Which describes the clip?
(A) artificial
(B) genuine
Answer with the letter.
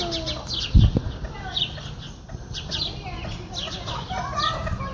B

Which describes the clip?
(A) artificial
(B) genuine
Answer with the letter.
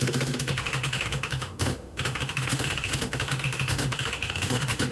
A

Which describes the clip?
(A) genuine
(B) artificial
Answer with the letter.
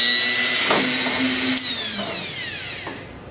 A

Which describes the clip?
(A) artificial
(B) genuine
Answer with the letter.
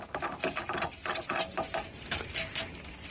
B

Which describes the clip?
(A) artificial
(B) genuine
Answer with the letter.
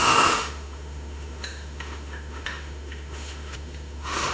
A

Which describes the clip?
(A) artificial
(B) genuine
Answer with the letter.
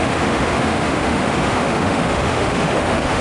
A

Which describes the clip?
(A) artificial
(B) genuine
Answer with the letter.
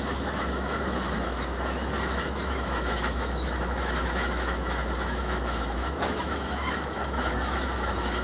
A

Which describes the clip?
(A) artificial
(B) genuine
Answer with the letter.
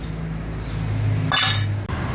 B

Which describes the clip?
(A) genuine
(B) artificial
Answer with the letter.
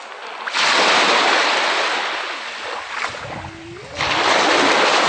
A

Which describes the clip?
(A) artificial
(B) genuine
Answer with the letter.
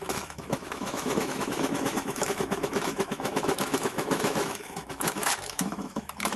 A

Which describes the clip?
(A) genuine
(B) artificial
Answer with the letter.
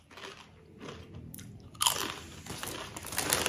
A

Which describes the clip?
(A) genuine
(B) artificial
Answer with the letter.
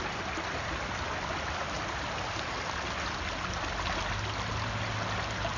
A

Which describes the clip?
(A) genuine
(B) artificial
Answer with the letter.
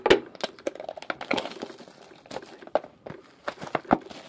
A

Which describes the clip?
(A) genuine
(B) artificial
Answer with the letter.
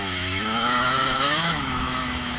B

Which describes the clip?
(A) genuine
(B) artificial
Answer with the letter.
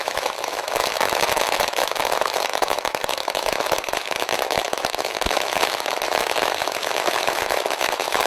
B